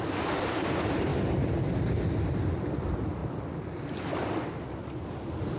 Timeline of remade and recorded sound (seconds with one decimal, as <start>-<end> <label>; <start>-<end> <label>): 0.0-5.6 recorded